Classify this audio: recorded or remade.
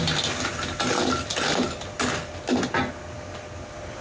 recorded